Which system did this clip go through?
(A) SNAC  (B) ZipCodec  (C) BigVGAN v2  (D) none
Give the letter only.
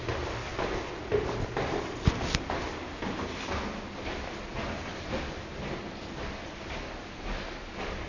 D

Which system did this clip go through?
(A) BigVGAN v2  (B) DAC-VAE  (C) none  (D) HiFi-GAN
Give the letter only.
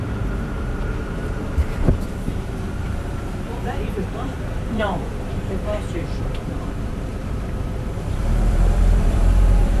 A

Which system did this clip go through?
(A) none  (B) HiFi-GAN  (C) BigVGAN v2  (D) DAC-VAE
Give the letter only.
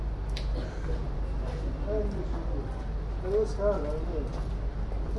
A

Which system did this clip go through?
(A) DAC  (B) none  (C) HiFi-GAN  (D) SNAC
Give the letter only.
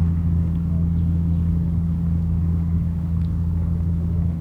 A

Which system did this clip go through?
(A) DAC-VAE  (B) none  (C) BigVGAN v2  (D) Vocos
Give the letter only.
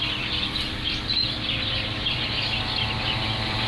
C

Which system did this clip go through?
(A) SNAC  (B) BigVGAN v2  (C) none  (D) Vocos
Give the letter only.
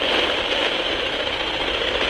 C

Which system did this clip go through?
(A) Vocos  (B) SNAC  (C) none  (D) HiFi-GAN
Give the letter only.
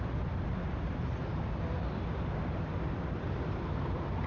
C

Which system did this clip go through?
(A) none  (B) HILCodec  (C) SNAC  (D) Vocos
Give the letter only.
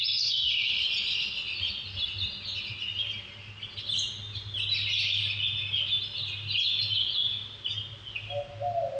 A